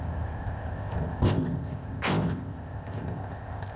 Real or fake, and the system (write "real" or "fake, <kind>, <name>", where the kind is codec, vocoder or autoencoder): fake, codec, ZipCodec